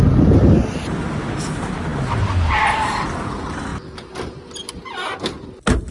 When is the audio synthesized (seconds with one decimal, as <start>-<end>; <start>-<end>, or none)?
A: none